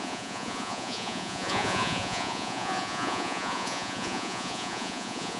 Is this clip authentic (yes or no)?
no